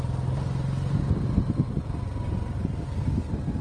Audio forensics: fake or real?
real